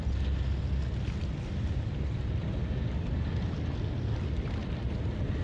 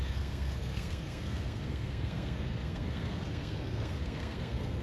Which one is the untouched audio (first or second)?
first